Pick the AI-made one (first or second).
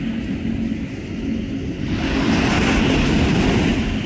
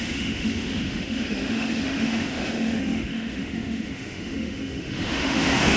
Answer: second